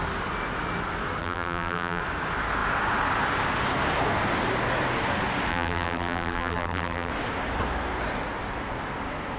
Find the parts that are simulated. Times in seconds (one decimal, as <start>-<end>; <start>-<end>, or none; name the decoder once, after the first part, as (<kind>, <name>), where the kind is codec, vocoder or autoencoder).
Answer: 1.2-2.0 (vocoder, BigVGAN v2); 5.5-7.1